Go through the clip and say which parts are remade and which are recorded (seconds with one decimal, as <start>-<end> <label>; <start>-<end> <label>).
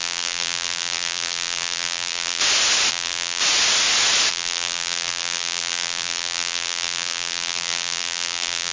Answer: 0.0-2.4 remade; 2.4-2.9 recorded; 2.9-3.4 remade; 3.4-4.3 recorded; 4.3-8.7 remade